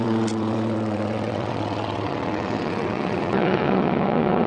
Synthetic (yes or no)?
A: yes